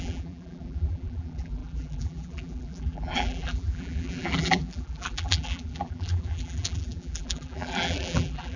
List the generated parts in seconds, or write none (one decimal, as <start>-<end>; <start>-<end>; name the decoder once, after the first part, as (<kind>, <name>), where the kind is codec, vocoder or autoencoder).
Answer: 0.0-8.6 (vocoder, BigVGAN v2)